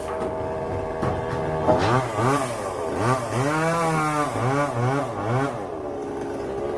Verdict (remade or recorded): recorded